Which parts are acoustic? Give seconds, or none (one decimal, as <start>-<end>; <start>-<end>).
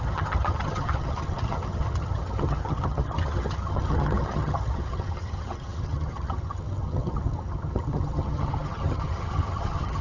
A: none